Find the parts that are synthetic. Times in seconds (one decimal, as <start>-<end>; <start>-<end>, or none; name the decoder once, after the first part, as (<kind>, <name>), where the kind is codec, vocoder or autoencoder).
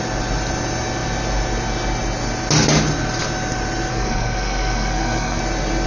3.9-5.4 (codec, SNAC)